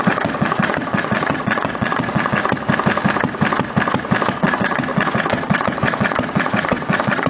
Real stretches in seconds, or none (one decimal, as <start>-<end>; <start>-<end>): 2.4-4.3